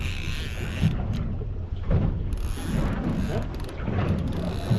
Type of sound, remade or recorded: recorded